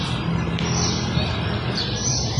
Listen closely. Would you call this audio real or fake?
real